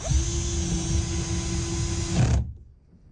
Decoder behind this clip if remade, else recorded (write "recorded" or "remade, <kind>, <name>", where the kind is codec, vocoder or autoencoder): recorded